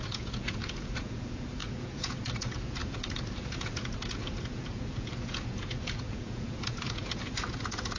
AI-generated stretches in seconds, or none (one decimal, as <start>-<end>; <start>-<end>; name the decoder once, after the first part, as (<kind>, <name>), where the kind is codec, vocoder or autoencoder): 0.0-8.0 (vocoder, Vocos)